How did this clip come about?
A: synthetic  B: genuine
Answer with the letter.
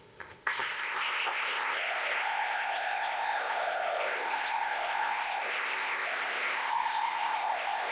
A